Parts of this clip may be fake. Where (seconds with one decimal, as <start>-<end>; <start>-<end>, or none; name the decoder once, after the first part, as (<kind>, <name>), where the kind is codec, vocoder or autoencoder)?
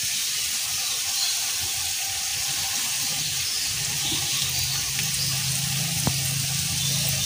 none